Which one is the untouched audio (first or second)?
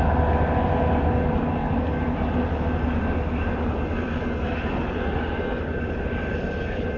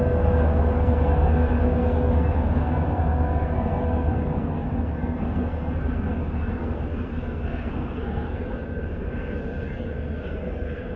first